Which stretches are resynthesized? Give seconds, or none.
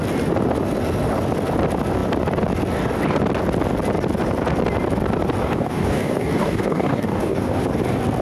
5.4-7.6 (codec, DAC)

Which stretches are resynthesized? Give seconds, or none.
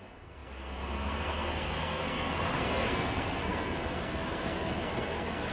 0.0-5.5 (codec, SNAC)